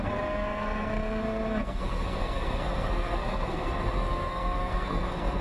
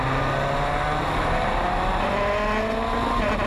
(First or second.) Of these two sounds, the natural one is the second